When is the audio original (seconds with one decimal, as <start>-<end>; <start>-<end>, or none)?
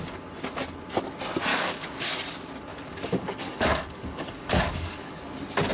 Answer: 0.0-1.5; 2.1-2.7; 5.1-5.7